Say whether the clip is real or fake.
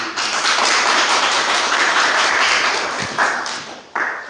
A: fake